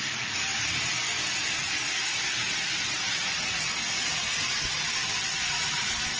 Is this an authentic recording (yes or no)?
no